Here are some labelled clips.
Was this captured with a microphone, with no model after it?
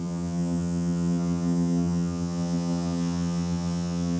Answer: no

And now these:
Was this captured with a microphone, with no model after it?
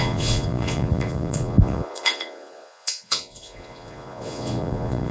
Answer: no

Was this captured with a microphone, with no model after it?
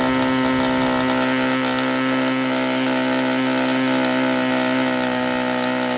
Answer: yes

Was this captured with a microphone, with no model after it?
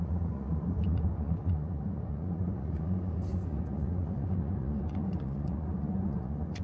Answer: no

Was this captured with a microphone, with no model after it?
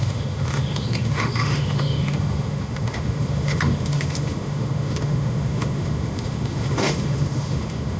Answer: no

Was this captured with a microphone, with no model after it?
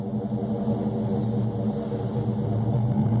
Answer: yes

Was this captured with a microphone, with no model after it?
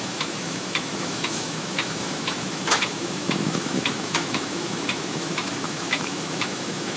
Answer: no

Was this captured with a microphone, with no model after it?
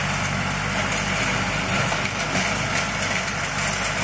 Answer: yes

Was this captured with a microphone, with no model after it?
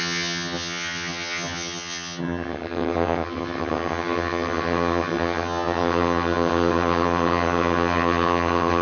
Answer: no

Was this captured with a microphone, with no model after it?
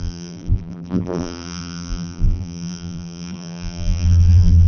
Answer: no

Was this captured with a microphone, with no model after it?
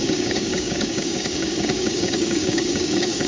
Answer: no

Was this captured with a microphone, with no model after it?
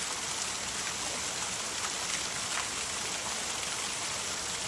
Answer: yes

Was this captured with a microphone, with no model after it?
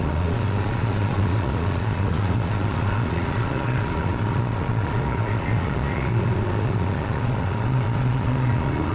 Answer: no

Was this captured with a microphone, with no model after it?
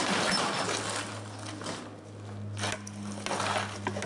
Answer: yes